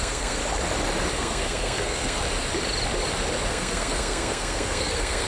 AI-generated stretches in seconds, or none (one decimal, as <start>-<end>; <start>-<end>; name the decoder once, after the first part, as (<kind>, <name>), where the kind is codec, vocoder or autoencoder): 0.0-0.4 (codec, SNAC); 1.1-2.2; 3.5-5.3